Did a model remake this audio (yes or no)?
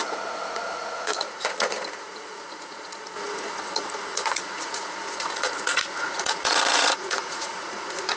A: yes